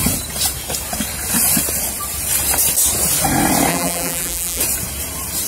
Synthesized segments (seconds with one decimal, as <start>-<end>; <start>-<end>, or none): 3.7-4.6